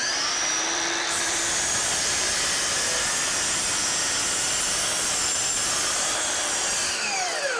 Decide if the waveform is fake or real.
fake